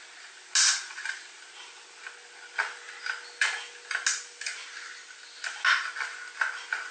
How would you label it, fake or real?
real